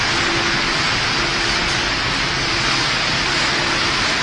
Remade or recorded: recorded